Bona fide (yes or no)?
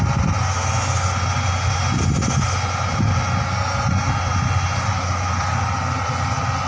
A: yes